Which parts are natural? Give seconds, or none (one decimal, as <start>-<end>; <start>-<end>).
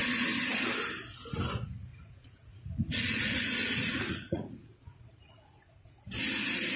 0.0-1.9; 6.0-6.8